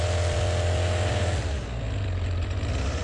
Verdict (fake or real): real